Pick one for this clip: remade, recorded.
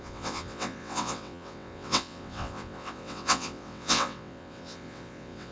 remade